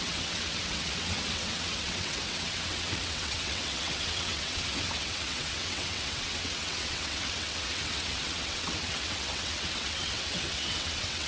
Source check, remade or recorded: remade